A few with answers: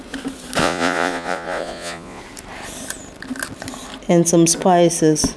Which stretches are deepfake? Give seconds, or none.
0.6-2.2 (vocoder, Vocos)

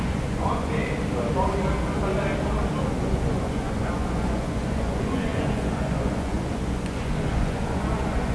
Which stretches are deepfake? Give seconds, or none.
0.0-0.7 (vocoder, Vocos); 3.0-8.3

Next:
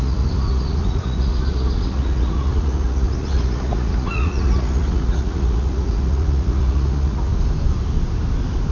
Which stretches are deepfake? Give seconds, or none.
0.0-7.3 (vocoder, Vocos)

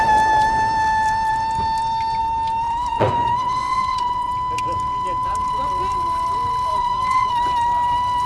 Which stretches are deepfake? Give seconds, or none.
2.9-4.3 (vocoder, Vocos); 6.7-7.3